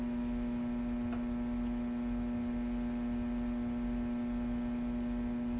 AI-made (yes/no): no